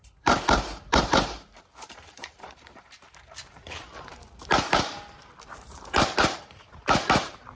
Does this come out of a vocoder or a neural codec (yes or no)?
yes